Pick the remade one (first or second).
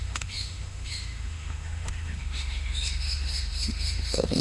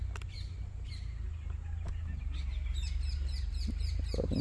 first